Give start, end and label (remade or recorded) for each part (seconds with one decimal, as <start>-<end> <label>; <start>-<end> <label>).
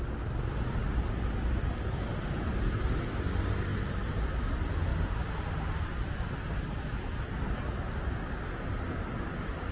0.0-9.7 recorded